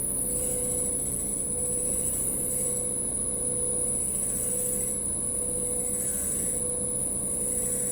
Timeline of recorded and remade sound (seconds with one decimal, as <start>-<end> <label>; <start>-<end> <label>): 0.0-1.3 recorded; 1.3-2.7 remade; 2.7-6.1 recorded; 6.1-6.6 remade; 6.6-7.9 recorded